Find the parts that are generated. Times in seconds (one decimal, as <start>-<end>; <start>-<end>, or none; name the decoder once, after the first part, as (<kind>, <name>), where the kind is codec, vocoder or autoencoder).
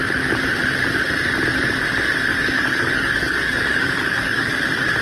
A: 2.3-4.6 (codec, DAC)